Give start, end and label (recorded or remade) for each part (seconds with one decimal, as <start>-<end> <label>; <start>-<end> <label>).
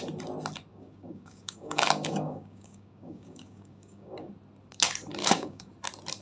0.0-0.7 recorded; 0.7-4.3 remade; 4.3-5.2 recorded; 5.2-5.7 remade; 5.7-6.2 recorded